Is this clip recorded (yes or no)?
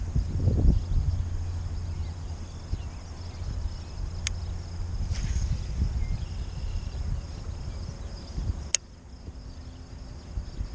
yes